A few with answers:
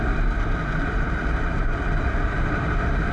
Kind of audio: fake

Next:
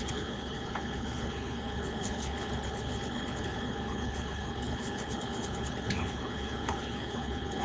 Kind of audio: fake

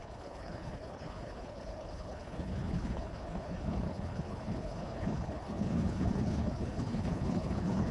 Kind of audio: fake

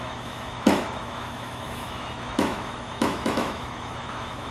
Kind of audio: fake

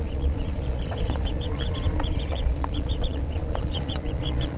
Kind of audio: fake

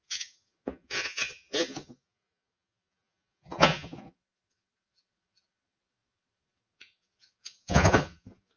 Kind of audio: fake